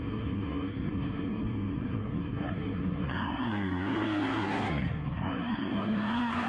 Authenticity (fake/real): fake